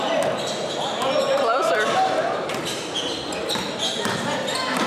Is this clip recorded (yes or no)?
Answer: yes